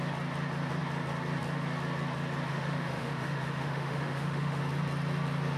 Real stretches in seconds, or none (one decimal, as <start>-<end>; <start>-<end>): 0.0-2.5; 4.6-5.6